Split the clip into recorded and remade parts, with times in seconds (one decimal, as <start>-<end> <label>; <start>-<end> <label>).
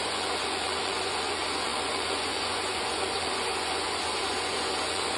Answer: 0.0-5.2 remade